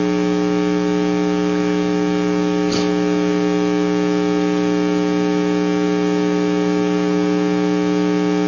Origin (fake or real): real